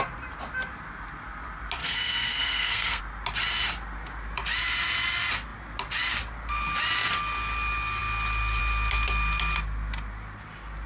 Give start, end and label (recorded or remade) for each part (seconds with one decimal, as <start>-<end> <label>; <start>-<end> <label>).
0.0-1.8 recorded; 1.8-3.0 remade; 3.0-10.9 recorded

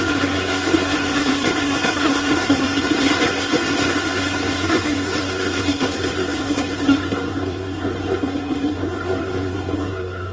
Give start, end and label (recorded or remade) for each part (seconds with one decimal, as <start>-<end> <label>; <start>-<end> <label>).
0.0-10.3 remade